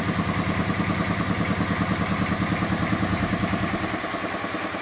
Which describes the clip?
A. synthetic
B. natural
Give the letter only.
B